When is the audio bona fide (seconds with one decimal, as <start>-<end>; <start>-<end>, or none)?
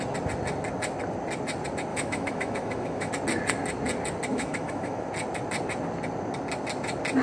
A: 0.0-1.9; 3.1-4.3; 5.1-7.2